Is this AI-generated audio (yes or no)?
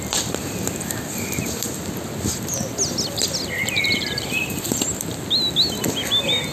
no